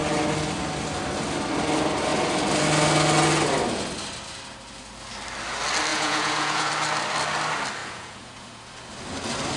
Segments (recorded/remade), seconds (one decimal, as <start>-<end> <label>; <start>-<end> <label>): 0.0-5.9 recorded; 5.9-6.7 remade; 6.7-7.8 recorded; 7.8-8.7 remade; 8.7-9.6 recorded